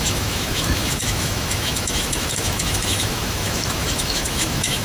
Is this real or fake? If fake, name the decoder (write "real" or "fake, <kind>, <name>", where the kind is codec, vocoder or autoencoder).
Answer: fake, autoencoder, DAC-VAE